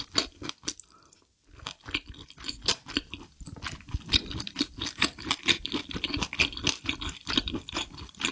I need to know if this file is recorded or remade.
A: recorded